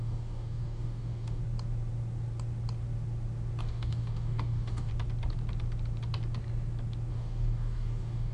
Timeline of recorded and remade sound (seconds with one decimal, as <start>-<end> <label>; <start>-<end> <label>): 0.0-1.4 remade; 1.4-3.6 recorded; 3.6-4.9 remade; 4.9-7.1 recorded; 7.1-8.3 remade